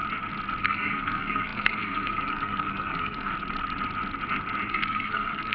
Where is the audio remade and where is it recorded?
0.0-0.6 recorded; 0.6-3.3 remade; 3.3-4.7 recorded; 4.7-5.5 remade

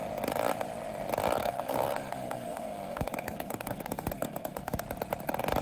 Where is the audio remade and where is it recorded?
0.0-1.4 recorded; 1.4-4.8 remade; 4.8-5.6 recorded

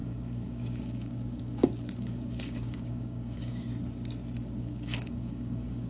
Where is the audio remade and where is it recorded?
0.0-3.7 remade; 3.7-4.6 recorded; 4.6-5.9 remade

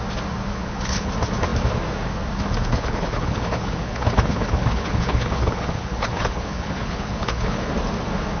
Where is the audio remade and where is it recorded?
0.0-0.5 recorded; 0.5-1.1 remade; 1.1-2.7 recorded; 2.7-7.7 remade; 7.7-8.4 recorded

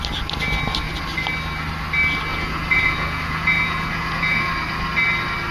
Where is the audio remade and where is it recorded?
0.0-2.3 recorded; 2.3-4.5 remade; 4.5-5.5 recorded

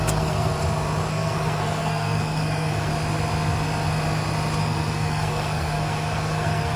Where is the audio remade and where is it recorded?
0.0-0.5 remade; 0.5-1.1 recorded; 1.1-2.9 remade; 2.9-4.6 recorded; 4.6-6.8 remade